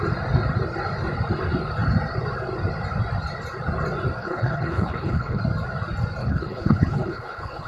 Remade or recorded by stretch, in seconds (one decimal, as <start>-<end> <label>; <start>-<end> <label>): 0.0-4.2 recorded; 4.2-5.4 remade; 5.4-6.2 recorded; 6.2-7.7 remade